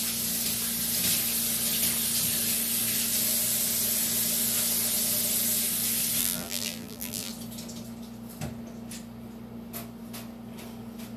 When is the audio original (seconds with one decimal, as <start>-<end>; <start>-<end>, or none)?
0.0-6.2; 7.3-11.2